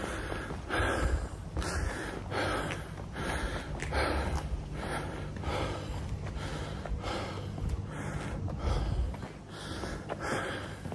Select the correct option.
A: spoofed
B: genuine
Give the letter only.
B